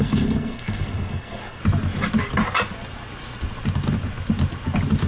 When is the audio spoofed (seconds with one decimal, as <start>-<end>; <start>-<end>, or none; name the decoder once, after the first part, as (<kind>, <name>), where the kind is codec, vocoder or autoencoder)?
0.0-1.6 (codec, SNAC)